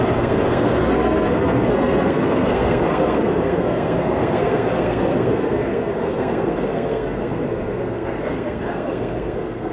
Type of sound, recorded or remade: remade